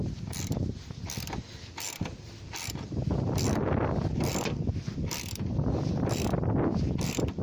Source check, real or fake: real